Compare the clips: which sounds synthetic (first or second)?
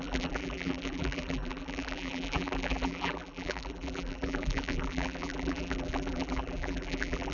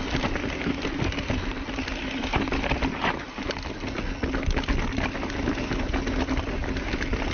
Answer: first